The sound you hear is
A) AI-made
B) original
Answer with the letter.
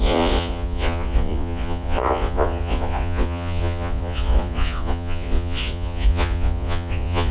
A